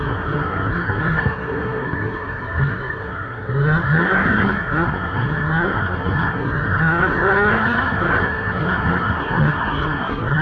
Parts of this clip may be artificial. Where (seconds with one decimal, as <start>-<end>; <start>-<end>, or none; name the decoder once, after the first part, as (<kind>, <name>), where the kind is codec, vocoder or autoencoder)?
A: 0.0-10.4 (codec, SNAC)